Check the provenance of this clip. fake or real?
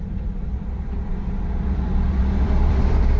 fake